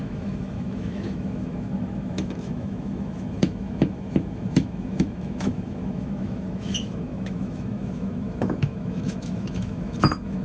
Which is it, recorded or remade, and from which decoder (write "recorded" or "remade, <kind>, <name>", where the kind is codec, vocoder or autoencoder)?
remade, autoencoder, DAC-VAE